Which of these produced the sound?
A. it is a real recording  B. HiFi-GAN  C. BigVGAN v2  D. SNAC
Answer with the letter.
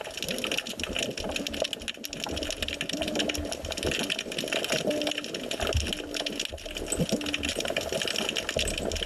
A